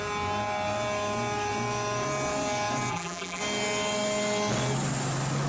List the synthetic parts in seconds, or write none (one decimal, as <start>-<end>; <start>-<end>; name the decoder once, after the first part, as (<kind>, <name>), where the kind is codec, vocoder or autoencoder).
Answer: 2.9-3.4 (vocoder, BigVGAN v2)